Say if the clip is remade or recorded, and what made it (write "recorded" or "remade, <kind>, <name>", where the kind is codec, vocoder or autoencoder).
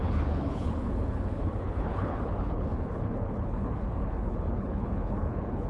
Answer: remade, codec, HILCodec